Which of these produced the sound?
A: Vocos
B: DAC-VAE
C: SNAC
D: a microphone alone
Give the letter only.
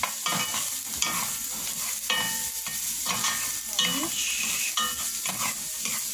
D